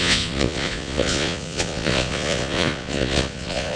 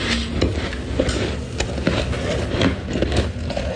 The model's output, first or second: first